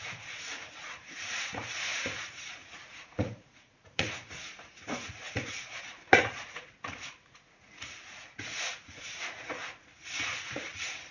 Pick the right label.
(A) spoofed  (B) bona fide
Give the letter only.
A